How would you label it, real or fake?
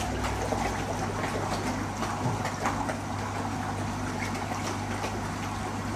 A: real